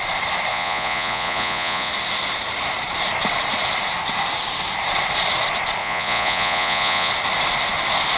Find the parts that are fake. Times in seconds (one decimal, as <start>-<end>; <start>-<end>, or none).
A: 0.5-1.9; 5.8-7.1